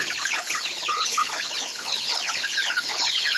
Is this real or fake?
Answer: fake